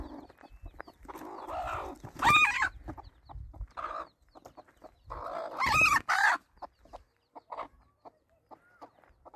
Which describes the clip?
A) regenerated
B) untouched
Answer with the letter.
B